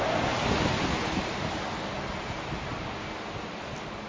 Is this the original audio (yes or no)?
yes